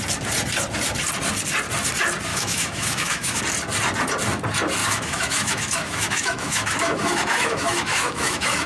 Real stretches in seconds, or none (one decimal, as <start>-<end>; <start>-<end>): 0.0-2.3; 3.4-4.8